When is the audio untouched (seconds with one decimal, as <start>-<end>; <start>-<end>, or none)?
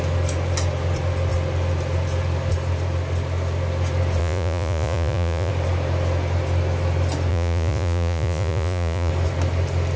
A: 0.0-4.2; 5.5-7.3; 9.1-10.0